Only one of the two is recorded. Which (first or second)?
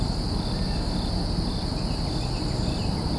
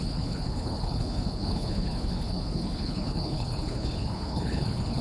first